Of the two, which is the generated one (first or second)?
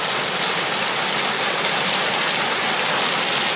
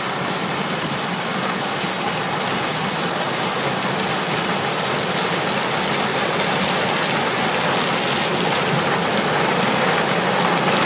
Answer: first